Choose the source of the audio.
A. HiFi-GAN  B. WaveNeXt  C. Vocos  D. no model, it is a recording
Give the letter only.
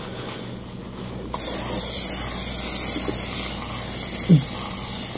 D